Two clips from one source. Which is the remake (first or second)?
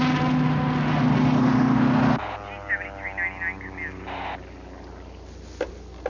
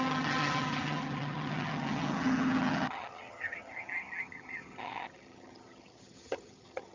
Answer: second